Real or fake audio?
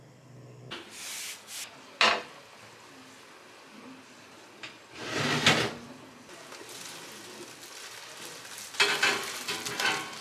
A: real